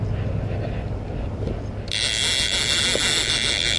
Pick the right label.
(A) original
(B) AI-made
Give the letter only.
A